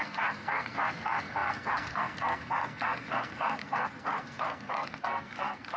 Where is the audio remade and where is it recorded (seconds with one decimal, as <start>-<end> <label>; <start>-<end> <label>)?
0.0-5.8 remade